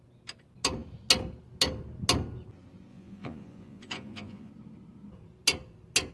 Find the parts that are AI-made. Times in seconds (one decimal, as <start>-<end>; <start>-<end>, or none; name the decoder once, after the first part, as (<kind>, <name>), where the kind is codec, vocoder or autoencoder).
2.9-4.5 (vocoder, Vocos)